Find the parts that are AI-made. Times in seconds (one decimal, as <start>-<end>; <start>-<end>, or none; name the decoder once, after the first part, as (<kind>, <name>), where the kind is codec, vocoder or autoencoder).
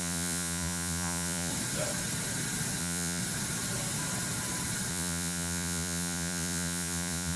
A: 0.0-1.5 (vocoder, Vocos); 2.8-3.2; 4.9-7.4